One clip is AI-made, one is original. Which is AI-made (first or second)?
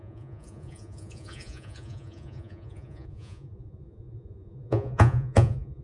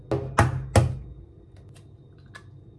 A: first